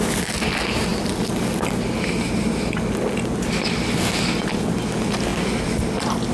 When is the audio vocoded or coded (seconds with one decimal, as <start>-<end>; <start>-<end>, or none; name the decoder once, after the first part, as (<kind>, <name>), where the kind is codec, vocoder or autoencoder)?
none